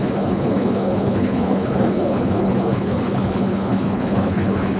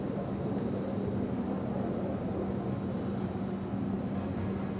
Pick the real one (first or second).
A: second